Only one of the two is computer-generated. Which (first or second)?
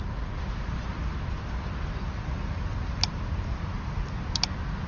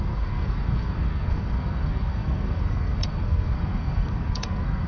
second